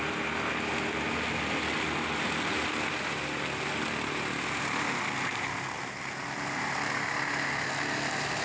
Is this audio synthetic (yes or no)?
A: no